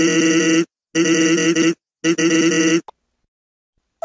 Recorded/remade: recorded